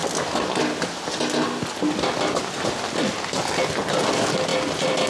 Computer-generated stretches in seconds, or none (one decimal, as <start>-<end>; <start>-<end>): none